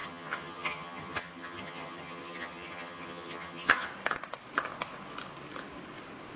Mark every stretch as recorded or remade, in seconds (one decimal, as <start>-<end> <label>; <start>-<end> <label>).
0.0-3.9 remade; 3.9-6.4 recorded